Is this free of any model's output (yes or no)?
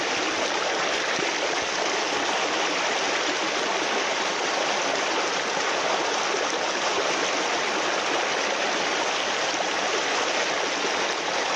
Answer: yes